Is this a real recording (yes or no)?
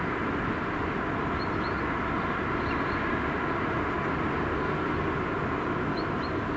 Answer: yes